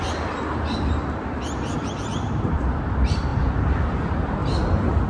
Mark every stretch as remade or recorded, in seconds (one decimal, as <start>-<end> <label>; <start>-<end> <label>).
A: 0.0-1.0 recorded; 1.0-2.2 remade; 2.2-4.4 recorded; 4.4-5.1 remade